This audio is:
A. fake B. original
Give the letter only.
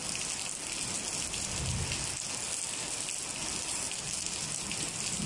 B